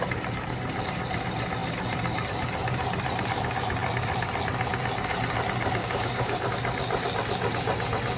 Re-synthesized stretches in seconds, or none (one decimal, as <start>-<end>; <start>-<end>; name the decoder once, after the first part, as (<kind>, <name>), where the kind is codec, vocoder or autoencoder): 5.8-6.5 (codec, DAC)